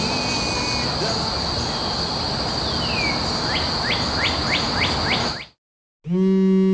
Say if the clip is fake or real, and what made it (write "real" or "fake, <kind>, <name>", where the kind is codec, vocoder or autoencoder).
real